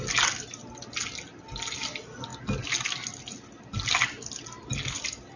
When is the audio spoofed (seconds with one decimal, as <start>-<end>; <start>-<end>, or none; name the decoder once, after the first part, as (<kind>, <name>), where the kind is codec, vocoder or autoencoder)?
none